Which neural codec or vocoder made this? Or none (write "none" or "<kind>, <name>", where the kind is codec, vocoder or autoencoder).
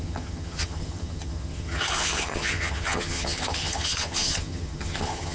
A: vocoder, HiFi-GAN